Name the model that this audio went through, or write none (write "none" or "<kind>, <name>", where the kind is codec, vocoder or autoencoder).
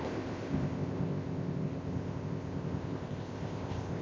codec, ZipCodec